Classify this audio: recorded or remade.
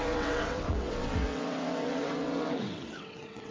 remade